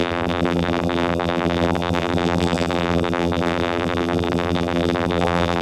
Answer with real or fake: fake